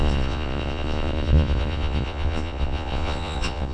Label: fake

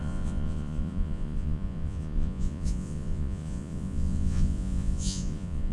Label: fake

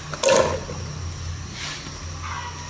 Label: real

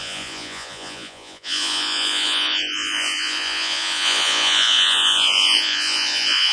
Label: fake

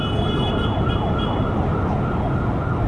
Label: real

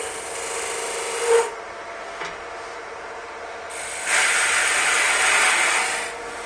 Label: real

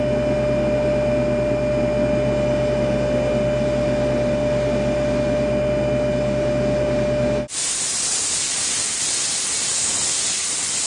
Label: real